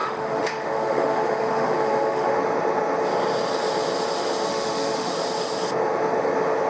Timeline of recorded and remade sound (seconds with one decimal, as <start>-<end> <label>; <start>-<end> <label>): 0.0-2.3 remade; 2.3-4.5 recorded; 4.5-5.1 remade; 5.1-6.7 recorded